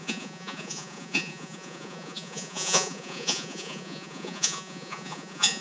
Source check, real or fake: fake